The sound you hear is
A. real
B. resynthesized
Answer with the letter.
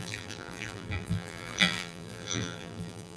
B